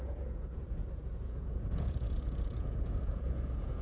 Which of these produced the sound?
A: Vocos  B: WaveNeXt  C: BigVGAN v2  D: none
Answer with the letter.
A